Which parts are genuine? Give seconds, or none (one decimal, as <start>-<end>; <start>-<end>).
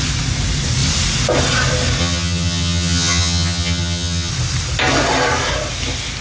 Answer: 0.0-2.0; 4.3-6.2